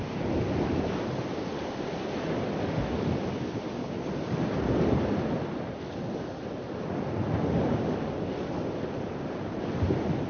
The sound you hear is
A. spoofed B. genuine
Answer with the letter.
B